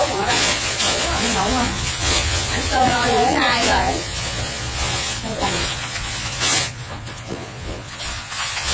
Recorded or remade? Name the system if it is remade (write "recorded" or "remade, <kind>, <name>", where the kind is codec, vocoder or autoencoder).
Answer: remade, vocoder, Vocos